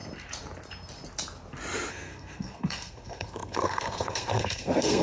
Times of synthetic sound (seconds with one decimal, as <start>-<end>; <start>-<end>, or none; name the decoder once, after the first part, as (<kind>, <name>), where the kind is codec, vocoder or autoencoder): 1.9-5.0 (codec, SNAC)